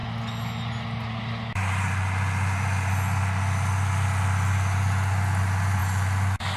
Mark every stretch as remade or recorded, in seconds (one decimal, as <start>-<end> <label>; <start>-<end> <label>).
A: 0.0-6.6 recorded

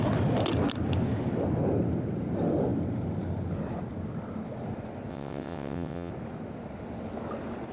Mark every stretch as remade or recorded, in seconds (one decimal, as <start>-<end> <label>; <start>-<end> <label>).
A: 0.0-5.1 recorded; 5.1-6.1 remade; 6.1-7.7 recorded

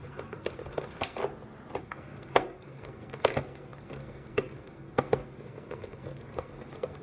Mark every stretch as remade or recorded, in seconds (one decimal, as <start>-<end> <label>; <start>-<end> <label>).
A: 0.0-1.2 remade; 1.2-1.8 recorded; 1.8-7.0 remade

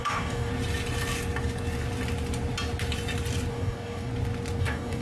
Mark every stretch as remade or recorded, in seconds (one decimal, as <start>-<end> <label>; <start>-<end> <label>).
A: 0.0-0.5 remade; 0.5-3.5 recorded; 3.5-4.1 remade; 4.1-4.6 recorded; 4.6-5.0 remade

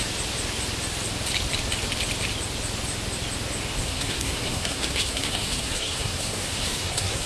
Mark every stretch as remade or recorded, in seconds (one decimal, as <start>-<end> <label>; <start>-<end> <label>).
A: 0.0-3.8 recorded; 3.8-7.3 remade

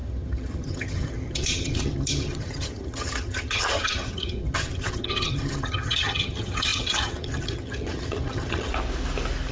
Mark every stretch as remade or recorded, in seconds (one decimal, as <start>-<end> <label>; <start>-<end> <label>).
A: 0.0-8.7 remade; 8.7-9.5 recorded

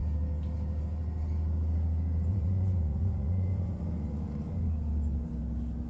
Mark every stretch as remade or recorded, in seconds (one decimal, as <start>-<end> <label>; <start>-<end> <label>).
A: 0.0-2.3 recorded; 2.3-4.5 remade; 4.5-5.9 recorded